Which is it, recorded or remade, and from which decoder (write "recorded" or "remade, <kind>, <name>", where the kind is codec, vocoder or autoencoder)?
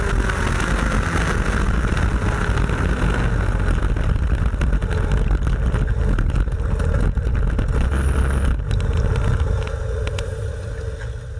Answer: recorded